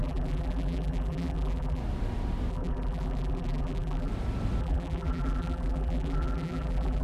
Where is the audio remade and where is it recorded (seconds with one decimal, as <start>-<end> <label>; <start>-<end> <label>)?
0.0-1.8 remade; 1.8-2.5 recorded; 2.5-4.1 remade; 4.1-4.6 recorded; 4.6-7.0 remade

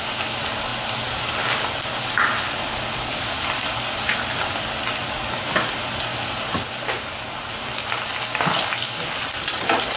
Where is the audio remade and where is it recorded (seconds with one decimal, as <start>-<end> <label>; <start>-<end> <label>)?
0.0-10.0 recorded

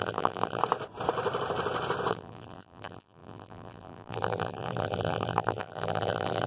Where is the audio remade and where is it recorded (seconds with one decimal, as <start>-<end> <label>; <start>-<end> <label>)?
0.0-0.6 remade; 0.6-2.1 recorded; 2.1-6.5 remade

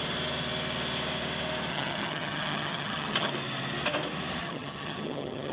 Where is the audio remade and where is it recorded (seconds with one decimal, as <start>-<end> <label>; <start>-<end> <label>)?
0.0-1.7 recorded; 1.7-3.3 remade; 3.3-4.4 recorded; 4.4-5.5 remade

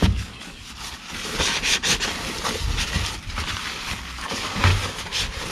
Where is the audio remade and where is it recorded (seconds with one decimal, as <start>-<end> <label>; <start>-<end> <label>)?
0.0-0.6 remade; 0.6-3.8 recorded; 3.8-4.7 remade; 4.7-5.5 recorded